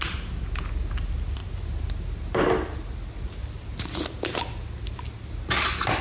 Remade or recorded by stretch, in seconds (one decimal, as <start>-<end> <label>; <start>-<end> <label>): 0.0-6.0 recorded